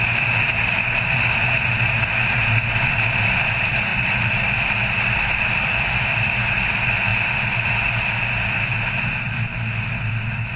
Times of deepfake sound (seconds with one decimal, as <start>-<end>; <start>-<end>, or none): 3.9-6.4; 7.1-9.4